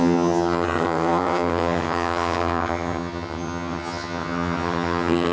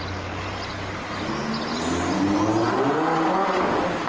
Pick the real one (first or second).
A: second